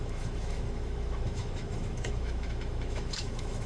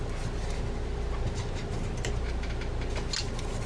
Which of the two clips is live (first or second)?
second